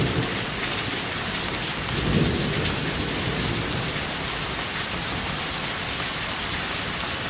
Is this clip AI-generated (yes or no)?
no